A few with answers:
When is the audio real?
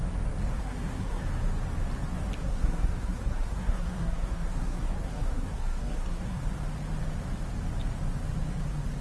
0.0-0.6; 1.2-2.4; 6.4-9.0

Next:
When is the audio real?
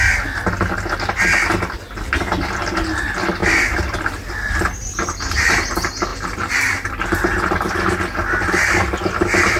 0.0-3.4; 5.5-6.1; 8.0-9.6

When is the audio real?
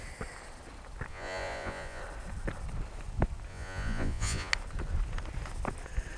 0.0-1.1; 2.0-3.5; 4.5-6.2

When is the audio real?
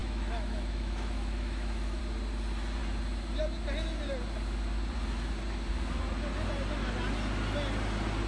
2.0-8.3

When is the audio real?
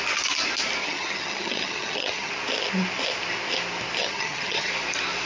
0.0-0.8; 2.3-4.0; 4.7-5.3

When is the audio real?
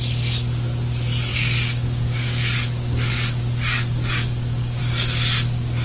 0.0-1.3; 4.8-5.8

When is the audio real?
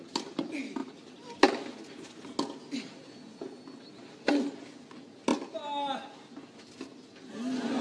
0.0-7.8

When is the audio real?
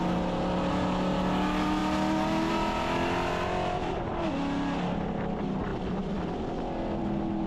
0.0-7.5